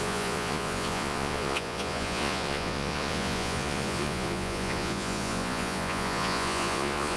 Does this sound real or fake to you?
fake